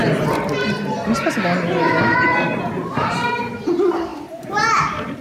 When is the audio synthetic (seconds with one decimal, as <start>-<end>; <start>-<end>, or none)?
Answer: 2.8-5.2